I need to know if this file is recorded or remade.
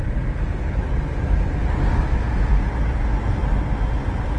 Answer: recorded